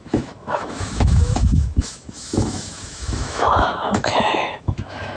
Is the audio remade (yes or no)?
yes